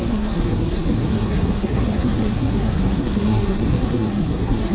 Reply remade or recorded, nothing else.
remade